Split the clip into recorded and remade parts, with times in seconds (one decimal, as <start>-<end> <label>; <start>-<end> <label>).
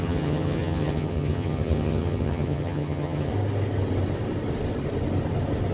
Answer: 0.0-3.3 remade; 3.3-5.7 recorded